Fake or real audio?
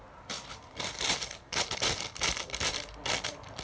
fake